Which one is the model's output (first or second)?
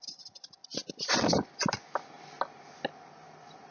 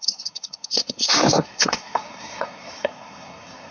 second